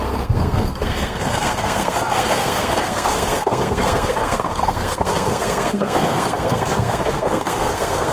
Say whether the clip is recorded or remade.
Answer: remade